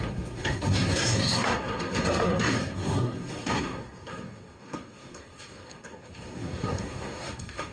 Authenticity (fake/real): fake